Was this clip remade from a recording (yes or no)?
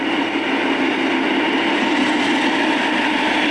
no